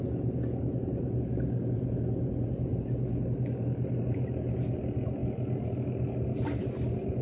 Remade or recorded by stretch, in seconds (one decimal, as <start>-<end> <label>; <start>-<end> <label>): 0.0-7.2 recorded